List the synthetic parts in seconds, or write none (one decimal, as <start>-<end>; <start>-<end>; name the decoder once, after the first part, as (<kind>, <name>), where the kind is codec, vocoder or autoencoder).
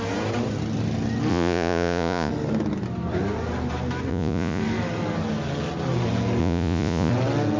1.3-2.3 (vocoder, Vocos); 4.1-4.6; 6.4-7.1